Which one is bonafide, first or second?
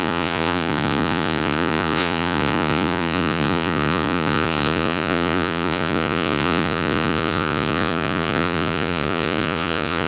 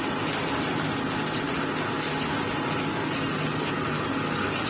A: second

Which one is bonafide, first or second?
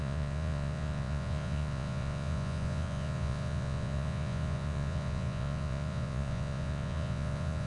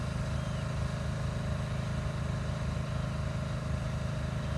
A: second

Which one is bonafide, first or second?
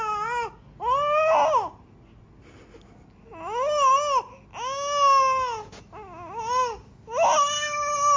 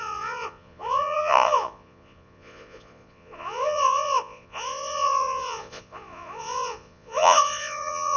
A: first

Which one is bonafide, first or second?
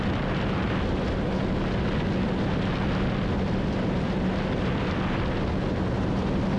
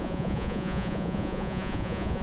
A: first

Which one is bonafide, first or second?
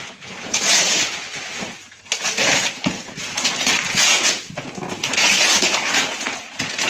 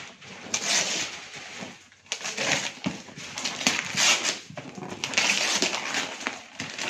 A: second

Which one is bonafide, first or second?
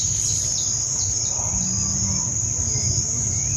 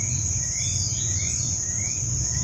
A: first